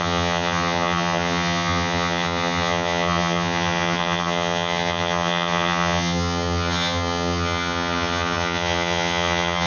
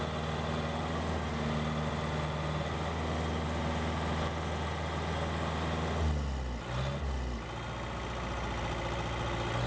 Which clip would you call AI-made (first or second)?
first